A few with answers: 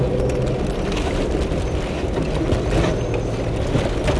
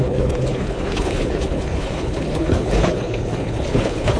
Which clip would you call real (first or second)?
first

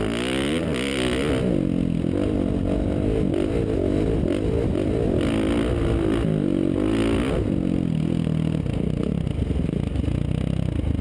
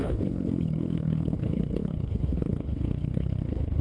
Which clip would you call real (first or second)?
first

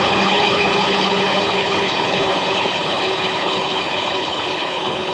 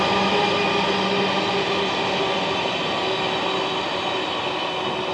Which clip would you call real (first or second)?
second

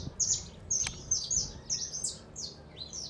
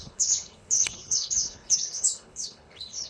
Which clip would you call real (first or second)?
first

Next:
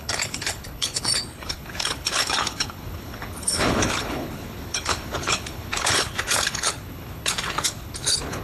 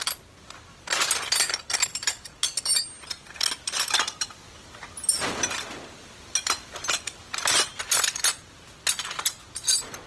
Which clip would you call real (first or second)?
second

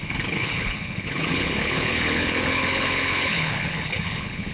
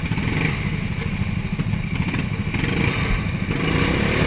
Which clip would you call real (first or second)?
second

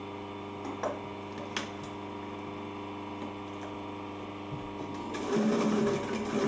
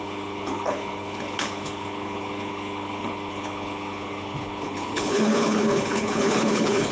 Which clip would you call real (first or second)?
first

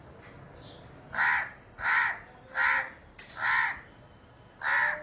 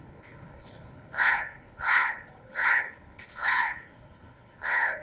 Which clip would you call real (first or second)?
first